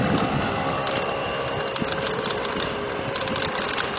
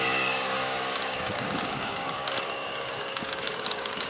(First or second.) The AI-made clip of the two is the second